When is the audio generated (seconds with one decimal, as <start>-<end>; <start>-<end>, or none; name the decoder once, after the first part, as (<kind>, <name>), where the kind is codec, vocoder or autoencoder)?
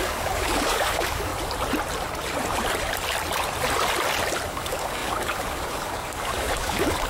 0.0-1.3 (codec, DAC); 4.5-7.1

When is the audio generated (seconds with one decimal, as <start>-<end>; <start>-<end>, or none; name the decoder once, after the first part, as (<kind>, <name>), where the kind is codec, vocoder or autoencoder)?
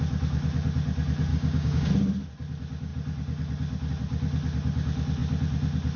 1.3-1.9 (codec, DAC)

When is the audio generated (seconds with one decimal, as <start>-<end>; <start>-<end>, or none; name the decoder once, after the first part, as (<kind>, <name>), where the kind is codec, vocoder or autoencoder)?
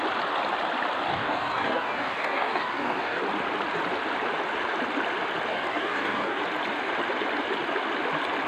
1.1-3.2 (codec, DAC); 5.5-6.4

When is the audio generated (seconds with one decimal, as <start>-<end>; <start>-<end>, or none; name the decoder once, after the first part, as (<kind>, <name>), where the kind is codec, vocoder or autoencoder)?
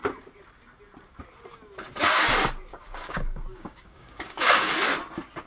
2.7-4.7 (codec, DAC)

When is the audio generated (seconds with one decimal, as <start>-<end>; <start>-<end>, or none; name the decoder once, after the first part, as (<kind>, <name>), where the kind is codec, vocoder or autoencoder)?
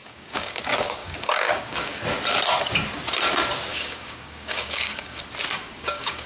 0.0-0.6 (codec, DAC); 1.0-2.0; 3.7-5.2; 5.7-6.3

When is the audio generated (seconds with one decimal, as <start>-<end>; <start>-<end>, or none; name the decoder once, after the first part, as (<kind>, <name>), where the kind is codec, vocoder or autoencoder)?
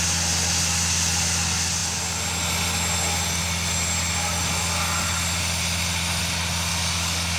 6.7-7.4 (codec, DAC)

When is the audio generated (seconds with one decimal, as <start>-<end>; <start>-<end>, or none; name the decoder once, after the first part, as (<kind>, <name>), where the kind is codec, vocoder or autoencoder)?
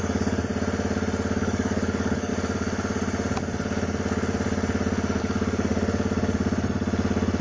0.0-0.5 (codec, DAC); 1.4-2.3; 5.2-5.7